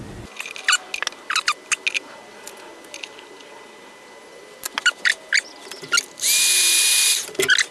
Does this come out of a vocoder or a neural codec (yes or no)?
no